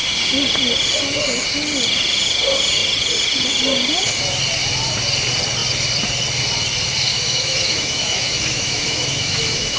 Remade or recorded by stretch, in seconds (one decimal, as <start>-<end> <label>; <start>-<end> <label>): 0.0-7.1 recorded; 7.1-9.8 remade